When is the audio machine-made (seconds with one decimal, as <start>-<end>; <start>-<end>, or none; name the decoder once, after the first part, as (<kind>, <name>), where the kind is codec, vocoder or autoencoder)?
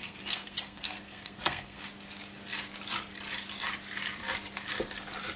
0.0-1.9 (codec, SNAC)